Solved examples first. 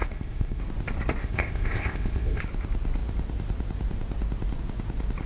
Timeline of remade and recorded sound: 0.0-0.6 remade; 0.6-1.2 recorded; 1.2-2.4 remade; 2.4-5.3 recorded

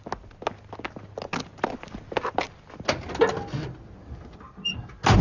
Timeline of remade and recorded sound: 0.0-5.2 recorded

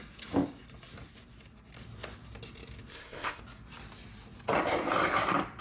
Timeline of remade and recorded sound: 0.0-2.9 recorded; 2.9-3.4 remade; 3.4-5.6 recorded